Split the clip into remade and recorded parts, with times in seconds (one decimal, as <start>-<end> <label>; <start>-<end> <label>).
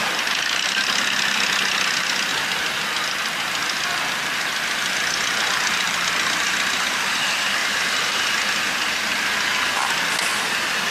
0.0-2.3 recorded; 2.3-6.1 remade; 6.1-7.6 recorded; 7.6-8.7 remade; 8.7-10.9 recorded